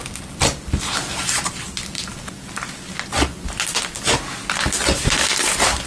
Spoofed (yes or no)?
no